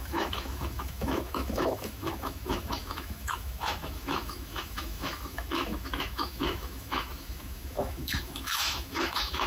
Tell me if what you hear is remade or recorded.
remade